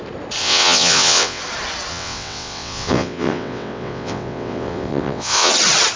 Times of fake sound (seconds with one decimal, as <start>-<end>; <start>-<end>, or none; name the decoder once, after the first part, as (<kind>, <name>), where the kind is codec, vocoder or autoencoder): 0.4-1.4 (vocoder, WaveNeXt); 1.9-5.5